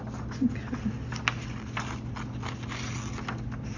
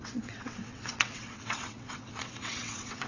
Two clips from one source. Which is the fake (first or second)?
second